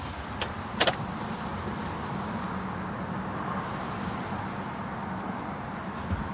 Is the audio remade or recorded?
recorded